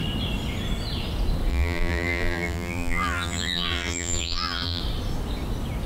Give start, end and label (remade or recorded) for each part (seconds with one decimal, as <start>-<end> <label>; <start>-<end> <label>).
0.0-1.5 recorded; 1.5-4.8 remade; 4.8-5.9 recorded

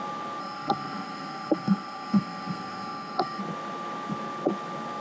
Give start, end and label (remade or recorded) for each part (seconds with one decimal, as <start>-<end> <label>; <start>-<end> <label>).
0.0-0.4 recorded; 0.4-3.4 remade; 3.4-5.0 recorded

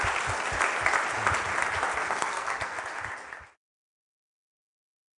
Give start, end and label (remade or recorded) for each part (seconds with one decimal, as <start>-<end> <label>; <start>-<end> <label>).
0.0-1.9 recorded; 1.9-2.8 remade; 2.8-5.2 recorded

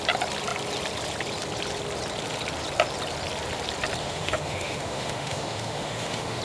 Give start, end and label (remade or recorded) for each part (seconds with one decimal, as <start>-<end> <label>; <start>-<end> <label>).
0.0-4.0 recorded; 4.0-6.4 remade